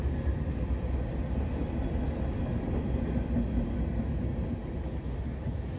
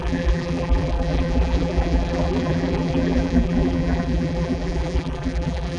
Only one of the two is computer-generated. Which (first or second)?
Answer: second